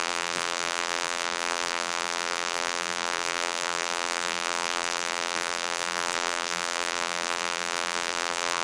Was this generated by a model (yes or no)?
yes